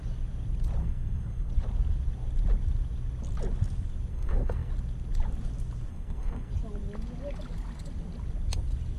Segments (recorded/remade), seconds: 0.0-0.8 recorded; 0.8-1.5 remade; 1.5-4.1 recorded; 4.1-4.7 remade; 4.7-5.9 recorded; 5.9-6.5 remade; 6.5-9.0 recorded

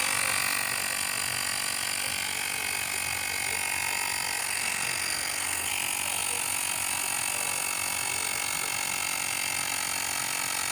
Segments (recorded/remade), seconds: 0.0-4.4 recorded; 4.4-5.7 remade; 5.7-10.7 recorded

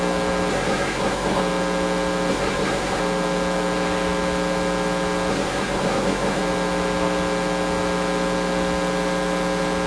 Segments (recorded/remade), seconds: 0.0-0.5 recorded; 0.5-1.4 remade; 1.4-2.3 recorded; 2.3-3.0 remade; 3.0-5.3 recorded; 5.3-6.4 remade; 6.4-9.9 recorded

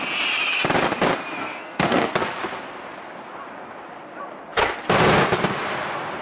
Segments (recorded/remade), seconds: 0.0-1.4 recorded; 1.4-2.1 remade; 2.1-6.2 recorded

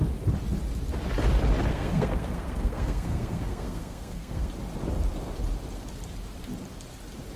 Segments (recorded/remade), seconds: 0.0-1.7 recorded; 1.7-4.5 remade; 4.5-7.4 recorded